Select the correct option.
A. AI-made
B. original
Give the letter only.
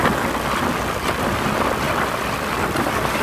B